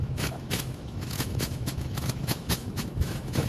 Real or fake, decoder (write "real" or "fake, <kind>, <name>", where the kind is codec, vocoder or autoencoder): fake, autoencoder, DAC-VAE